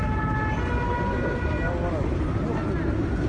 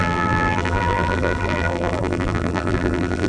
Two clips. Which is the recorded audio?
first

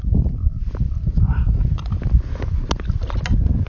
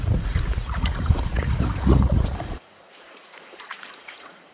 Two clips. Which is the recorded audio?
first